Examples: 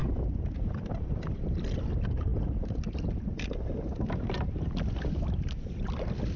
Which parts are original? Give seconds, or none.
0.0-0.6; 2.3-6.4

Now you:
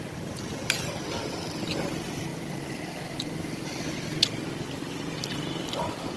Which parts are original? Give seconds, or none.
0.0-6.2

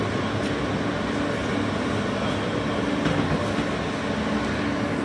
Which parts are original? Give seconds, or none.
0.0-5.0

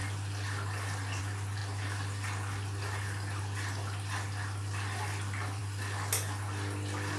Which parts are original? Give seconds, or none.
0.0-7.2

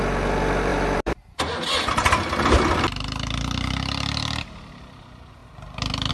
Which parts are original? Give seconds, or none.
0.0-0.7; 1.4-6.1

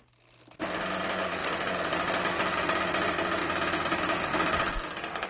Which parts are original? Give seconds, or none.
0.0-3.4; 4.2-5.3